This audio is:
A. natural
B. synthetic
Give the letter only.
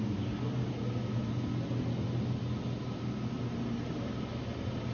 A